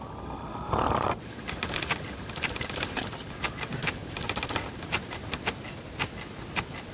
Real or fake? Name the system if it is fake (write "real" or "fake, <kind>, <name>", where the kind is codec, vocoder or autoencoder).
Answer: real